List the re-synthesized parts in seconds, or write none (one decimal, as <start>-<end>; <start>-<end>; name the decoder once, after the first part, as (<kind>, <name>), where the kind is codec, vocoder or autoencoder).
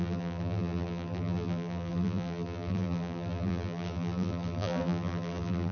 0.0-5.7 (vocoder, BigVGAN v2)